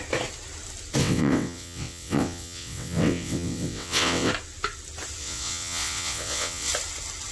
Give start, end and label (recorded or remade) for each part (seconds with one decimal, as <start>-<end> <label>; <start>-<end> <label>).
0.0-1.0 recorded; 1.0-4.3 remade; 4.3-5.2 recorded; 5.2-6.7 remade; 6.7-7.3 recorded